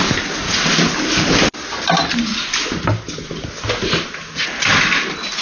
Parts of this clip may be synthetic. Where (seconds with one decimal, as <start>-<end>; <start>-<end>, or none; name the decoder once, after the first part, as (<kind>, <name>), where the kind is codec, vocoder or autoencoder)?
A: none